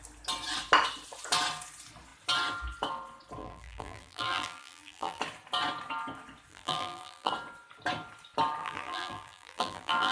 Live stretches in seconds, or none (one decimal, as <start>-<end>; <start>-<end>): 0.0-3.4; 5.2-6.5; 7.3-8.6